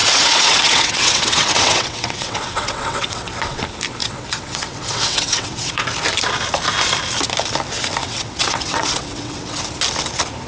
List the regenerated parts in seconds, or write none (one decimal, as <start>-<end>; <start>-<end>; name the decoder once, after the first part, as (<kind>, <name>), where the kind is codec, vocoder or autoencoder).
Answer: 0.0-3.6 (vocoder, WaveNeXt); 4.0-5.8; 8.0-9.6